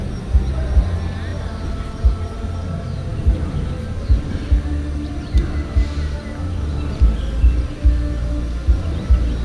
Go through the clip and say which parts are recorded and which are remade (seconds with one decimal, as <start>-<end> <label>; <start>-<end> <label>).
0.0-9.4 recorded